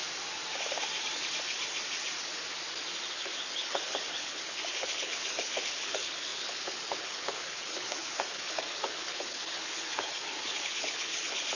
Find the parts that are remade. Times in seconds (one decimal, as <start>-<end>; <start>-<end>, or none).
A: 3.1-11.6